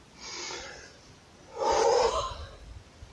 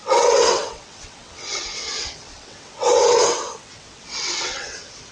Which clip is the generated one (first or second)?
second